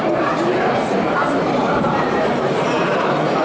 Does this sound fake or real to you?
fake